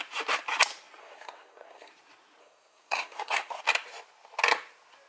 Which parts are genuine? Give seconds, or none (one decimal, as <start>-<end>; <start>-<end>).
0.0-1.0; 1.9-2.4; 3.6-5.1